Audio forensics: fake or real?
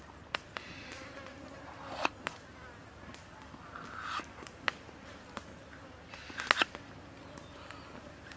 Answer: real